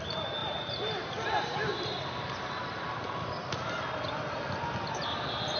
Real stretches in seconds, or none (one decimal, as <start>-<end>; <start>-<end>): 0.0-0.4; 3.8-5.6